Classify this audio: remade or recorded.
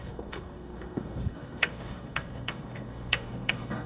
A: remade